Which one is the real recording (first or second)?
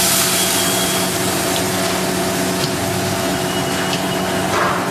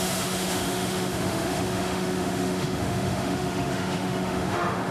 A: first